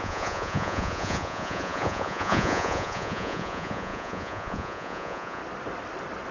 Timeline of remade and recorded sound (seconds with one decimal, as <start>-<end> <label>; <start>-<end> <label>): 0.0-5.4 remade; 5.4-6.3 recorded